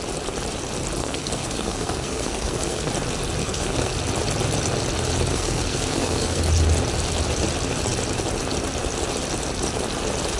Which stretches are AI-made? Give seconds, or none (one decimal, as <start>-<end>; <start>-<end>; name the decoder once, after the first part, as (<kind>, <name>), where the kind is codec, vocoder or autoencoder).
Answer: 1.0-2.9 (codec, SNAC); 3.4-3.9; 5.3-6.4

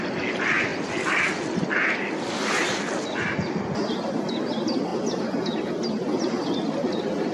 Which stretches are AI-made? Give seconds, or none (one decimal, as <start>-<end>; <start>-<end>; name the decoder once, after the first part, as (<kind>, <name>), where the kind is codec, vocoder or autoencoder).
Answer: none